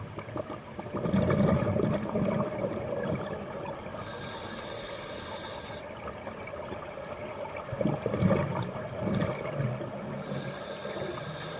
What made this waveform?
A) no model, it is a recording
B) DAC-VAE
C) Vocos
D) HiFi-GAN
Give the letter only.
A